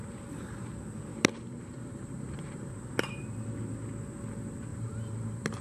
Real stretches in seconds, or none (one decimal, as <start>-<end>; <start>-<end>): 0.0-1.1; 2.7-4.7

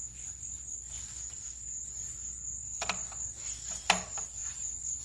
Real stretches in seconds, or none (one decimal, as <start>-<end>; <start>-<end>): 0.0-5.0

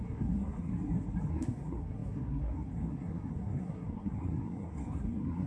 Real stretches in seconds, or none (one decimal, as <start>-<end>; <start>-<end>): 0.7-1.3

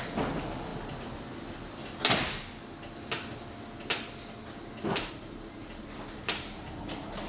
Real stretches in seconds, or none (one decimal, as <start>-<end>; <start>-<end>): 0.0-7.3

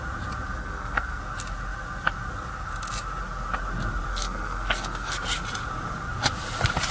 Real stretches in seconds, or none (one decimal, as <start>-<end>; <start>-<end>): 0.0-0.6; 1.2-4.1; 5.2-6.9

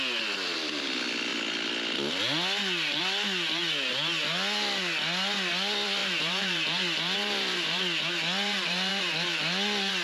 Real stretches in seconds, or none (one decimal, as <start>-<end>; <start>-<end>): 0.0-6.0; 8.9-10.0

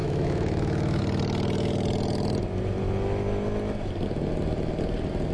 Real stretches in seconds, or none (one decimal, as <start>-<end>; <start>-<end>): 1.0-5.3